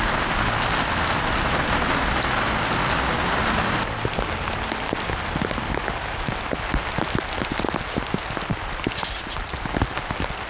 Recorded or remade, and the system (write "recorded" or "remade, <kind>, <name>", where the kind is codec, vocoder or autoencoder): recorded